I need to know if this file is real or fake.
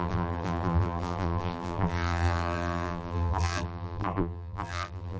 fake